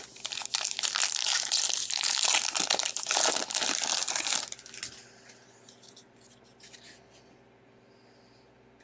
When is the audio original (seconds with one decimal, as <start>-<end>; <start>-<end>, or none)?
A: 0.0-8.8